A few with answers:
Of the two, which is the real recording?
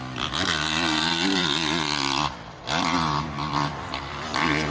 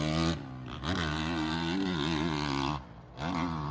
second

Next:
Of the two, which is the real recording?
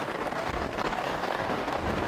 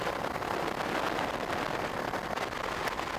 second